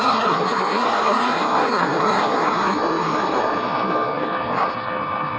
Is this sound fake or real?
fake